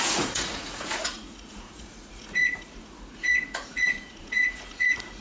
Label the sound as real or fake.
fake